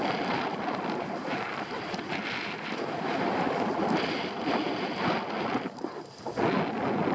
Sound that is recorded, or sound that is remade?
recorded